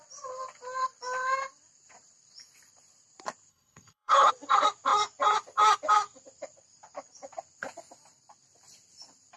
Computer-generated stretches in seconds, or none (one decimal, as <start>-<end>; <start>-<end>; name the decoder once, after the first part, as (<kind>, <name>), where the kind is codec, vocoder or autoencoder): 3.5-4.3 (codec, HILCodec)